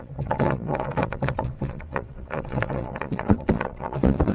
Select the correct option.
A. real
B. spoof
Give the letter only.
B